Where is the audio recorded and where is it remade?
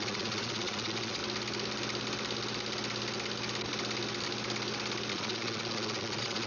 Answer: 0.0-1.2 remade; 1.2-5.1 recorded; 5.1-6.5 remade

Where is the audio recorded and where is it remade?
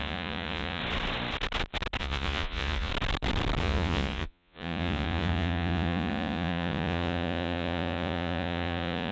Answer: 0.0-0.8 remade; 0.8-2.0 recorded; 2.0-2.9 remade; 2.9-3.6 recorded; 3.6-9.1 remade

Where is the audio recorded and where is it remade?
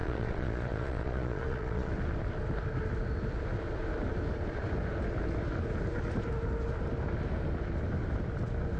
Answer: 0.0-1.9 remade; 1.9-8.8 recorded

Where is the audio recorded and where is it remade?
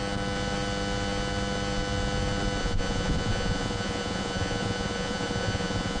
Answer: 0.0-2.6 recorded; 2.6-6.0 remade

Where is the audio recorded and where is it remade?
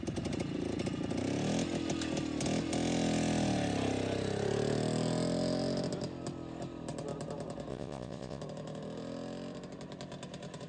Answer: 0.0-7.7 recorded; 7.7-8.4 remade; 8.4-10.7 recorded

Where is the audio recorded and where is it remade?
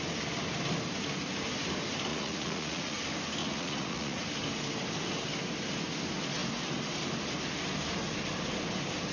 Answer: 0.0-2.1 recorded; 2.1-3.0 remade; 3.0-3.4 recorded; 3.4-4.2 remade; 4.2-9.1 recorded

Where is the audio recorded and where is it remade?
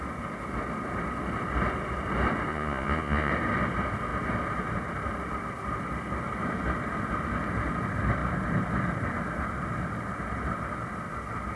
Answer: 0.0-2.5 recorded; 2.5-3.3 remade; 3.3-11.6 recorded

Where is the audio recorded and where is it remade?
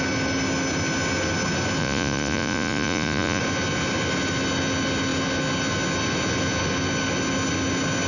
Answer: 0.0-1.8 recorded; 1.8-3.4 remade; 3.4-8.1 recorded